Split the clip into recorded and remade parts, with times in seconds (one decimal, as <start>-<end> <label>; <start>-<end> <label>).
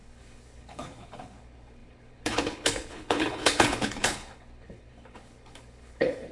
0.0-6.3 remade